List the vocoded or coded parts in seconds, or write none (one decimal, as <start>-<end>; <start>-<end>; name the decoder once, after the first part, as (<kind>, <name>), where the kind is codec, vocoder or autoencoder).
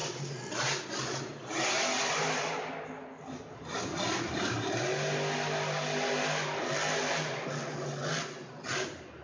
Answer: none